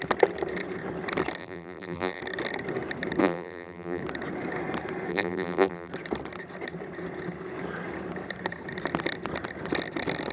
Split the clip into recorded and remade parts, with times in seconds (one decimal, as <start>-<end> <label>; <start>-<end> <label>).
0.0-1.4 recorded; 1.4-2.2 remade; 2.2-3.2 recorded; 3.2-4.0 remade; 4.0-5.1 recorded; 5.1-5.9 remade; 5.9-10.3 recorded